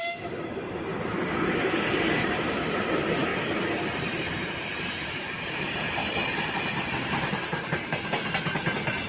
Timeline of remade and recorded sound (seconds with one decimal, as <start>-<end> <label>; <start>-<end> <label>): 0.0-8.2 remade; 8.2-9.1 recorded

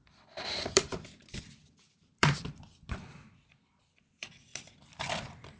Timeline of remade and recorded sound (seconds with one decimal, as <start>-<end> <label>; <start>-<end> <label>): 0.0-5.6 remade